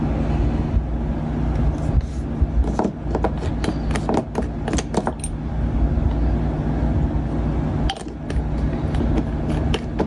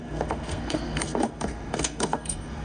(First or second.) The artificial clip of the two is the second